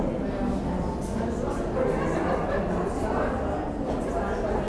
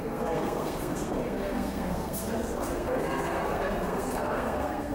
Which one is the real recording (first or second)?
first